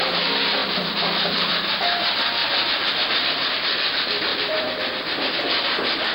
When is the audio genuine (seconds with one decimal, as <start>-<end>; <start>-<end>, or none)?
0.0-0.6; 1.5-2.4; 3.5-4.3; 5.4-6.1